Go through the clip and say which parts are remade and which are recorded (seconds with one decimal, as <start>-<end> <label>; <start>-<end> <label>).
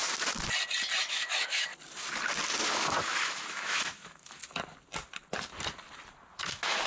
0.0-1.0 recorded; 1.0-1.7 remade; 1.7-2.7 recorded; 2.7-4.4 remade; 4.4-6.4 recorded; 6.4-6.9 remade